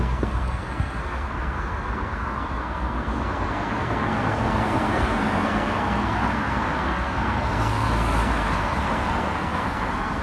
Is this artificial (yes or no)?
yes